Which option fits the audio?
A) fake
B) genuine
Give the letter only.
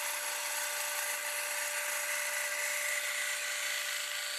B